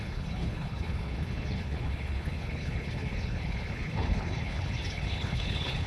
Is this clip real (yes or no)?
no